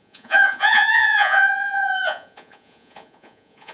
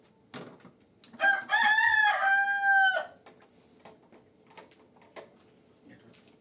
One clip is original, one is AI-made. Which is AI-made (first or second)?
first